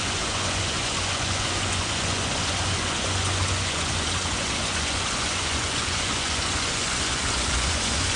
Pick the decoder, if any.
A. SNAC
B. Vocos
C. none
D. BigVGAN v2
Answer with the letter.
B